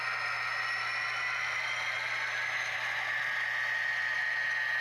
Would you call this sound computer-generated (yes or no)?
no